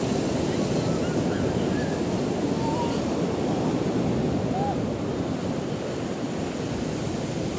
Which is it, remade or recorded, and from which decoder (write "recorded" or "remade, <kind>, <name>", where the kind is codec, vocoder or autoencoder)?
recorded